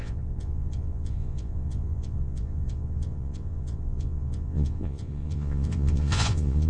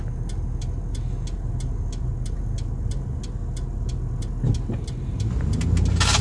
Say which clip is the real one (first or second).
second